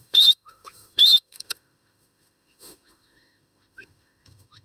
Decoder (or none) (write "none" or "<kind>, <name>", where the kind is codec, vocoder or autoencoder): autoencoder, DAC-VAE